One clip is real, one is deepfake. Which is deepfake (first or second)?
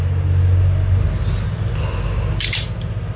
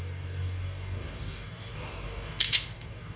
second